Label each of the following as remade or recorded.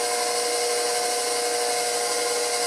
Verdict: recorded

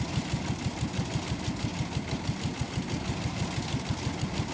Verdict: recorded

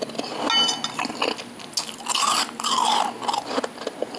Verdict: recorded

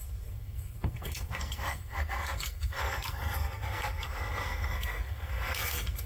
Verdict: remade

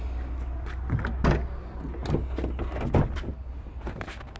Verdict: recorded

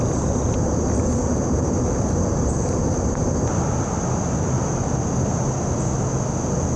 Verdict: recorded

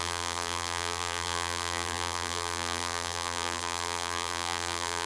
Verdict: remade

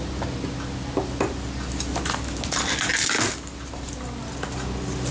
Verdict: recorded